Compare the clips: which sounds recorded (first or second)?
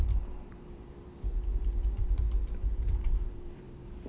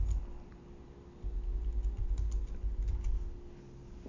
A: second